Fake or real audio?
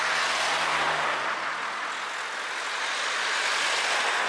real